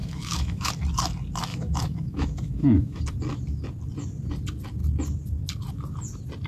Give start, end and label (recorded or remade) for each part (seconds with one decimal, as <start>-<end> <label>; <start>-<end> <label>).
0.0-0.7 remade; 0.7-1.5 recorded; 1.5-3.0 remade; 3.0-6.5 recorded